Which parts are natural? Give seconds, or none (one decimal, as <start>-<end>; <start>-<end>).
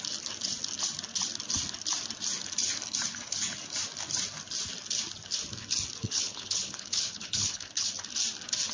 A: 0.0-6.0; 7.9-8.7